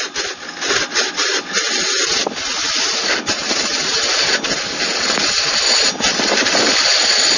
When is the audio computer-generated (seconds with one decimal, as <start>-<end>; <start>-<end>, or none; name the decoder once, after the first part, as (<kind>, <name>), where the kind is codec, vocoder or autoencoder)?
none